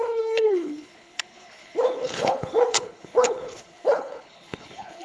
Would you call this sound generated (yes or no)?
yes